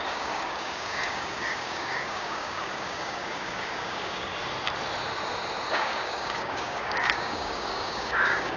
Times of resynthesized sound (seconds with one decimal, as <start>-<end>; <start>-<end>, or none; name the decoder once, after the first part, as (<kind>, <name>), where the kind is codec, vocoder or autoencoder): 0.0-4.3 (codec, DAC); 5.7-8.6